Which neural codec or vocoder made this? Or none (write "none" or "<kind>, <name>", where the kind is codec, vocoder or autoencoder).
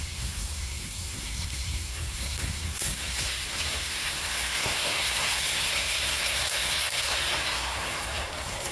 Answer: codec, SNAC